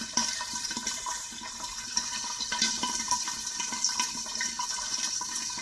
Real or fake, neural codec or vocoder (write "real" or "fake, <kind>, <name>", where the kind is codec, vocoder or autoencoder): fake, vocoder, BigVGAN v2